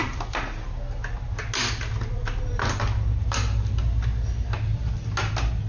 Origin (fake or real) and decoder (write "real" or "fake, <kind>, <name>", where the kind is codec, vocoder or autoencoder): real